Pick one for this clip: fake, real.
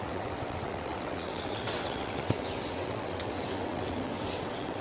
fake